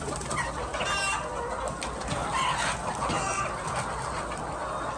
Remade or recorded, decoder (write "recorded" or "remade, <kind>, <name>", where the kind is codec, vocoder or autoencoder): recorded